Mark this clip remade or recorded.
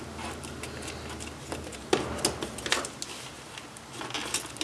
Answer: recorded